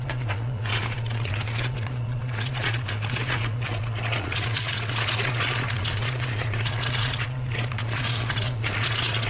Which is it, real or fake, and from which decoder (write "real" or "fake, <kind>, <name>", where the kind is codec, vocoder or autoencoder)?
fake, vocoder, Vocos